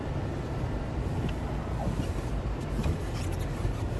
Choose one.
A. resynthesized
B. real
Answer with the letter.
B